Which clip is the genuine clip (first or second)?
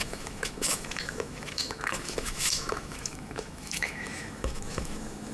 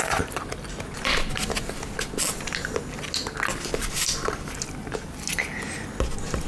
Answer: second